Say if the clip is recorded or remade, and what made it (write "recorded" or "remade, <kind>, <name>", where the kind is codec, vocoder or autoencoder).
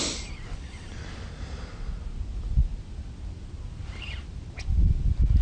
recorded